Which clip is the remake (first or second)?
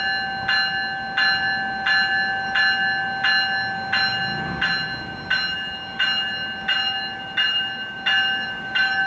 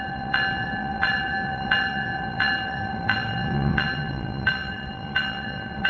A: second